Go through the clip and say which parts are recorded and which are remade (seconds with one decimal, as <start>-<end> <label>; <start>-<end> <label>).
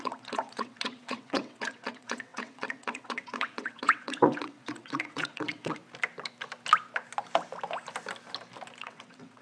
0.0-5.8 remade; 5.8-8.8 recorded; 8.8-9.4 remade